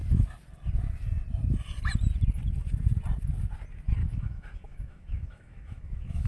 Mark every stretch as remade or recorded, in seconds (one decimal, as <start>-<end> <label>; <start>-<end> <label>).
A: 0.0-4.0 recorded; 4.0-6.3 remade